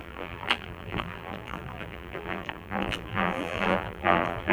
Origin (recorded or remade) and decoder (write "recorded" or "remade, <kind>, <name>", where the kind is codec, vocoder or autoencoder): remade, vocoder, BigVGAN v2